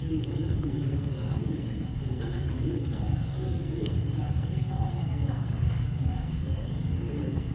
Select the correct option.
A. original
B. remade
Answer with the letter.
B